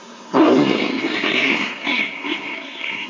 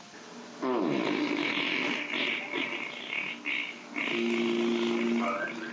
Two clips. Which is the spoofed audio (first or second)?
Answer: first